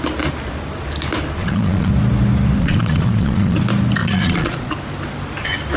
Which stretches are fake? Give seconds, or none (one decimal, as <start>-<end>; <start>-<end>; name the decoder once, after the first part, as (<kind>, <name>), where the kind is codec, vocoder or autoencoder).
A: 1.4-1.9 (vocoder, Vocos); 2.6-3.6; 4.0-4.7